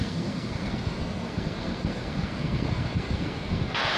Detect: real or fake fake